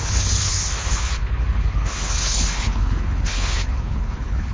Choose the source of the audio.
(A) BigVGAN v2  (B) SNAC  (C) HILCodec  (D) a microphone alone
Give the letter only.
C